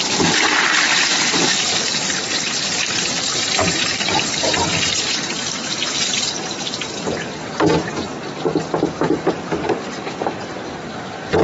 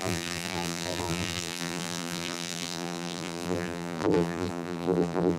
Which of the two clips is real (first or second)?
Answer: first